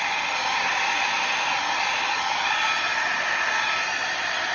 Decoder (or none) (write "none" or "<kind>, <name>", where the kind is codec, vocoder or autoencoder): vocoder, BigVGAN v2